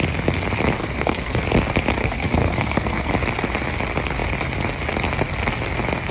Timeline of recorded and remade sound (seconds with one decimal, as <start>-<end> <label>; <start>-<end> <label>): 0.0-0.8 recorded; 0.8-1.4 remade; 1.4-2.0 recorded; 2.0-3.1 remade; 3.1-6.1 recorded